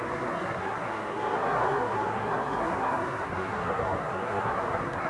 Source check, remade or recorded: remade